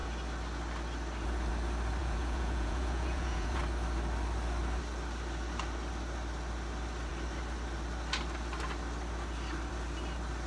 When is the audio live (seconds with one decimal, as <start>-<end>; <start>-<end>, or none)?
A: 0.0-2.0; 3.6-10.5